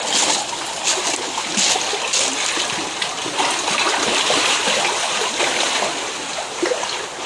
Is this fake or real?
real